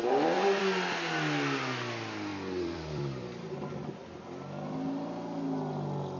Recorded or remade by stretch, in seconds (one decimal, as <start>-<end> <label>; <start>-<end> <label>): 0.0-0.6 remade; 0.6-2.3 recorded; 2.3-4.1 remade; 4.1-6.2 recorded